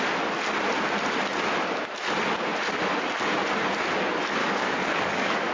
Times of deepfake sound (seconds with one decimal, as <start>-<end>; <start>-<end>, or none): 4.4-5.5